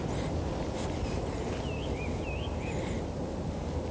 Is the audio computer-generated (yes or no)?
no